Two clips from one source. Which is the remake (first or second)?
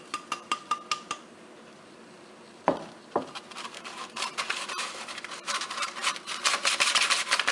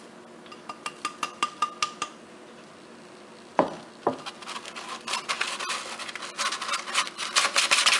first